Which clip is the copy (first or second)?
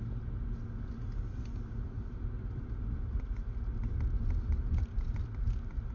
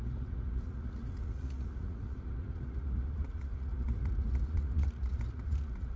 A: second